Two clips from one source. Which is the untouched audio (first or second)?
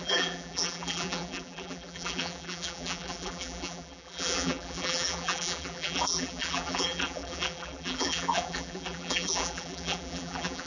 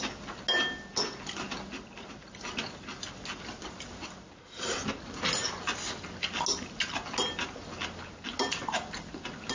second